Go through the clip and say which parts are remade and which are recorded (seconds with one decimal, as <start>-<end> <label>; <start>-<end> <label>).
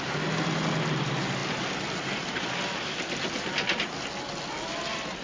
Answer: 0.0-5.2 recorded